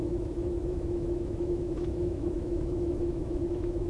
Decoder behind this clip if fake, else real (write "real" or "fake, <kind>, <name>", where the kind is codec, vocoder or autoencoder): fake, autoencoder, DAC-VAE